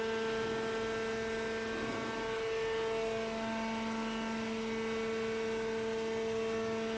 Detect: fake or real real